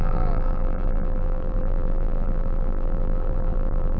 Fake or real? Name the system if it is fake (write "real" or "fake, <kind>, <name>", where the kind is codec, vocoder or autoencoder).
fake, vocoder, BigVGAN v2